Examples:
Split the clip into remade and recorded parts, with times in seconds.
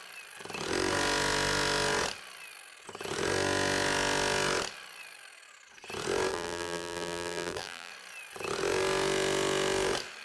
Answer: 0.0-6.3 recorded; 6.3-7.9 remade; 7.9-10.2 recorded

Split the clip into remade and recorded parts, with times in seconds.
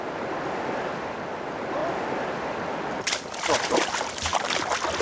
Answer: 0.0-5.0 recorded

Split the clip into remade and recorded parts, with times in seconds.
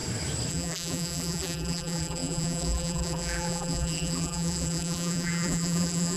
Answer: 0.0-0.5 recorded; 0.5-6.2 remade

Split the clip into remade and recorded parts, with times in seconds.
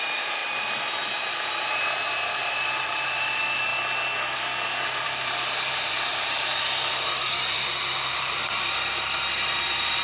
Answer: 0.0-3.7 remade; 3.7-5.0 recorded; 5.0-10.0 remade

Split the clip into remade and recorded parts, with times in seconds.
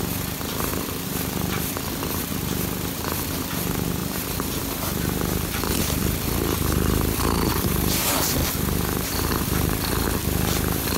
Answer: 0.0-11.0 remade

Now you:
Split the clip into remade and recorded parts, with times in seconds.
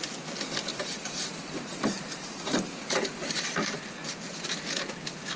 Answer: 0.0-0.7 recorded; 0.7-3.9 remade; 3.9-5.4 recorded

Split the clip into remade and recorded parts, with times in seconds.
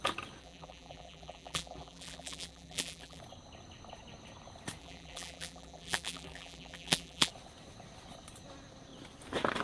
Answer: 0.0-0.4 recorded; 0.4-3.2 remade; 3.2-4.8 recorded; 4.8-7.3 remade; 7.3-9.6 recorded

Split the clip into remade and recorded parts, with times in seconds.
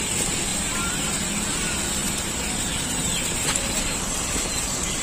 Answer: 0.0-0.5 recorded; 0.5-1.1 remade; 1.1-2.0 recorded; 2.0-5.0 remade